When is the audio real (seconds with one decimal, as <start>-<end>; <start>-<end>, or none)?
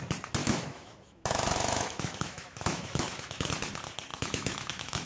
0.0-0.4; 3.5-4.1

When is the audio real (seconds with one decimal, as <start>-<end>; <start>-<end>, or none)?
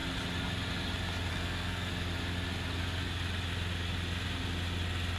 0.0-1.3; 1.9-5.2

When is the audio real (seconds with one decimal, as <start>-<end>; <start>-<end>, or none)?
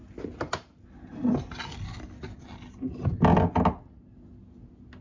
0.0-5.0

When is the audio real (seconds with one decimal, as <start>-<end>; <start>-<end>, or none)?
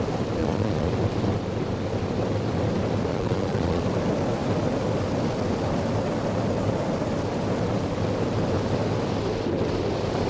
0.0-0.4; 0.9-3.1; 3.8-10.3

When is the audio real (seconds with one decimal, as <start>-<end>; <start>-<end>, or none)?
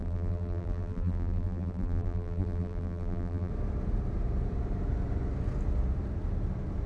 3.5-6.9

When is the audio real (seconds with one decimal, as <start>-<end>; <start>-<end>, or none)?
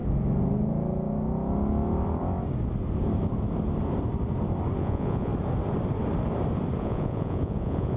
0.0-4.8; 5.3-6.8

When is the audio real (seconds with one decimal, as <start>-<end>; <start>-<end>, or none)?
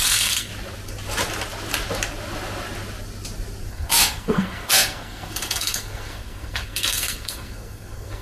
0.5-3.7